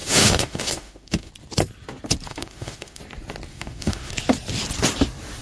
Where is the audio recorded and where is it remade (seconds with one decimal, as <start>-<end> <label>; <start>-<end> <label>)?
0.0-1.3 remade; 1.3-2.3 recorded; 2.3-3.0 remade; 3.0-3.5 recorded; 3.5-4.1 remade; 4.1-5.4 recorded